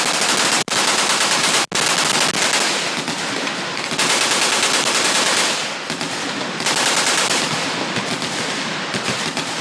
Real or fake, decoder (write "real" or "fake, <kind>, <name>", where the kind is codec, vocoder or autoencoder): real